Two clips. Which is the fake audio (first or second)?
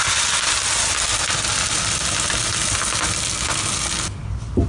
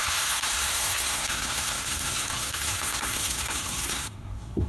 second